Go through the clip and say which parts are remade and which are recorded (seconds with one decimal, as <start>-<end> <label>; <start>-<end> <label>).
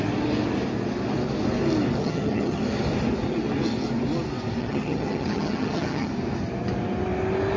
0.0-2.0 recorded; 2.0-2.6 remade; 2.6-4.6 recorded; 4.6-6.1 remade; 6.1-7.6 recorded